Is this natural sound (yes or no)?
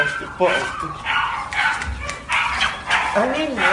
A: yes